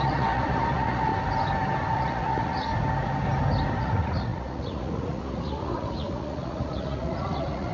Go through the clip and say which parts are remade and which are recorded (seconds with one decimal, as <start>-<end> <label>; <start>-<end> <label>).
0.0-1.1 remade; 1.1-1.9 recorded; 1.9-2.7 remade; 2.7-3.8 recorded; 3.8-7.7 remade